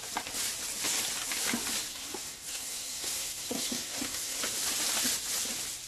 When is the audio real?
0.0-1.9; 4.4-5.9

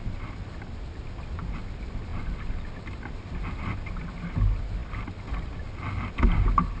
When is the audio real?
0.0-6.8

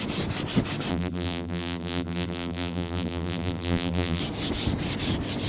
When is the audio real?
0.0-0.9; 4.2-5.5

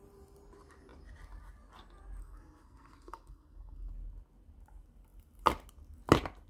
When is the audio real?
0.0-2.2; 3.9-6.5

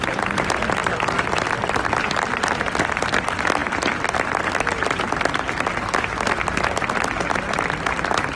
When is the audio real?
0.0-0.8; 2.4-8.4